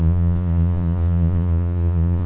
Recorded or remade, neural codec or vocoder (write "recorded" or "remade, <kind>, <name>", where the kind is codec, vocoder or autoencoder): remade, vocoder, Vocos